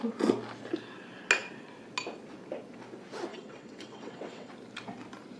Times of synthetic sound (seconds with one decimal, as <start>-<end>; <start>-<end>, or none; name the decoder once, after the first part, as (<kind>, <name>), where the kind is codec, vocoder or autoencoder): 3.3-4.5 (vocoder, WaveNeXt)